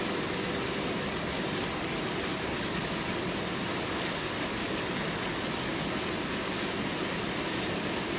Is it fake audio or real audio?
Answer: real